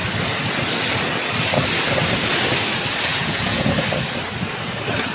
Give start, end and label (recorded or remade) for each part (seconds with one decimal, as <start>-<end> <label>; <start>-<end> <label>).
0.0-3.1 recorded; 3.1-3.7 remade; 3.7-5.1 recorded